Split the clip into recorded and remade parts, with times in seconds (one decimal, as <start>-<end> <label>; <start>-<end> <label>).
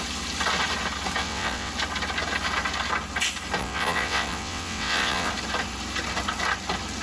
0.0-1.2 recorded; 1.2-1.7 remade; 1.7-3.6 recorded; 3.6-5.3 remade; 5.3-7.0 recorded